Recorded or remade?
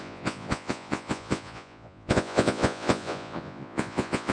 remade